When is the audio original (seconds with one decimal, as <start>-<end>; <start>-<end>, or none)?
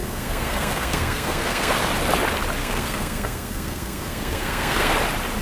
1.7-2.6; 4.9-5.4